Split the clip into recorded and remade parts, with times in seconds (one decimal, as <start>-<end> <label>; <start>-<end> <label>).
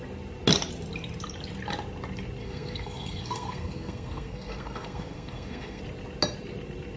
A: 0.0-2.4 recorded; 2.4-5.8 remade; 5.8-7.0 recorded